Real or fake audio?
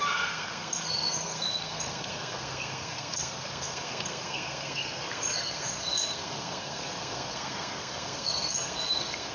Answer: fake